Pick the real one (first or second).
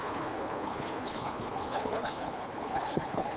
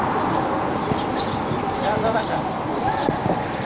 second